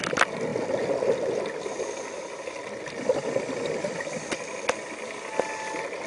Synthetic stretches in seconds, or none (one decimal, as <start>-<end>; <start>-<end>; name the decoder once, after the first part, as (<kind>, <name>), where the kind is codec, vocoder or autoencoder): none